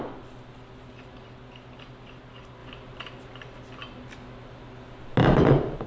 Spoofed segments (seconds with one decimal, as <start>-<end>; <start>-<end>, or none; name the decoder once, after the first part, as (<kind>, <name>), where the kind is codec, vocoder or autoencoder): none